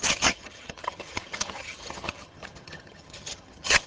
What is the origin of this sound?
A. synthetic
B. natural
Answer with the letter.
A